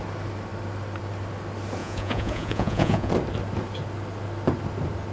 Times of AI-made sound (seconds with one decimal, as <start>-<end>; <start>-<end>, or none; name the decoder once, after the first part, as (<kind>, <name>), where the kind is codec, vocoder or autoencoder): 1.8-3.1 (vocoder, Vocos)